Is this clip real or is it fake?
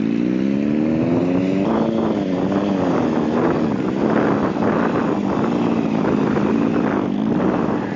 real